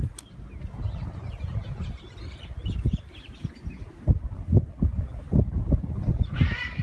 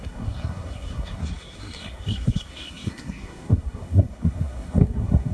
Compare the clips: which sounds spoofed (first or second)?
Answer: second